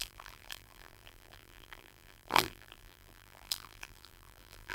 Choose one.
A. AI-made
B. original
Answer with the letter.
A